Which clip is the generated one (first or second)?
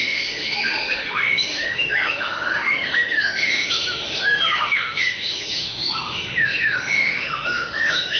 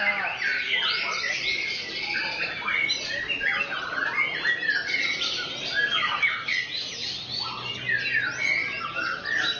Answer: first